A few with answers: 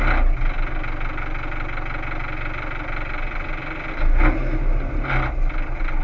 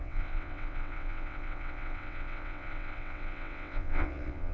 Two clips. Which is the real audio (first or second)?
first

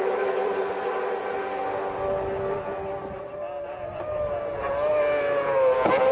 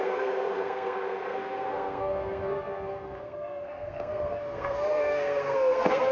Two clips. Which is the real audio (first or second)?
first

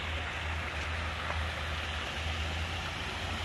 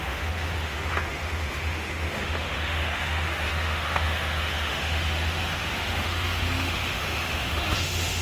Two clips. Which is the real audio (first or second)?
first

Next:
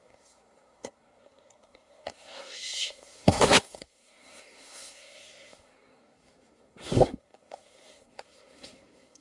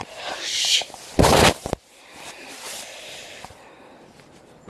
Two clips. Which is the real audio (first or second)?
second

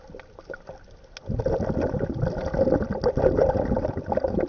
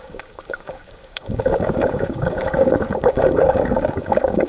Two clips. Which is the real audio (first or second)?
first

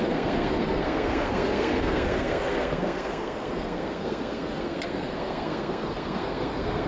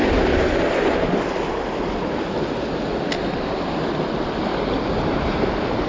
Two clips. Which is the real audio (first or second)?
second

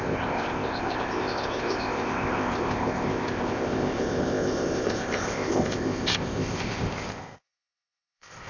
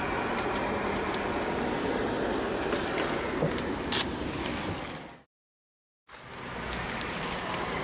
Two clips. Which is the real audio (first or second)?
second